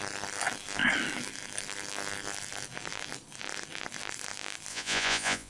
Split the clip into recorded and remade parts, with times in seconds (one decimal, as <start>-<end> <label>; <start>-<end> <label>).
0.0-4.7 recorded; 4.7-5.5 remade